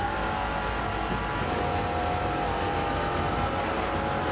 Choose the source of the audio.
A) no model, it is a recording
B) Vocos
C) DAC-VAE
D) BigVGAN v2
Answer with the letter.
A